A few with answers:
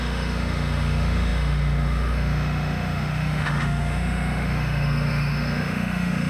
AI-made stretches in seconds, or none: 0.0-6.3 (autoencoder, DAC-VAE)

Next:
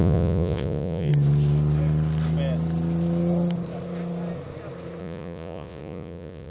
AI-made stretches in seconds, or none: 0.0-1.1 (vocoder, Vocos); 5.0-6.5

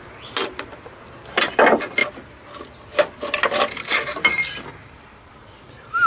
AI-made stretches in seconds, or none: none